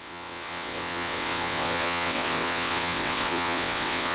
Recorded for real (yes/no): no